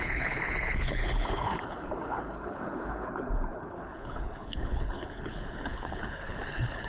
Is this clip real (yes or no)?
no